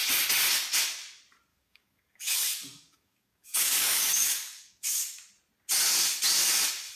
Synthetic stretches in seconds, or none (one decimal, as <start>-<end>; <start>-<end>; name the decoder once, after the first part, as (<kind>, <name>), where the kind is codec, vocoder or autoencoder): 1.5-5.0 (codec, DAC)